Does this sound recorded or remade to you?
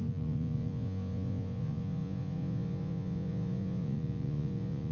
remade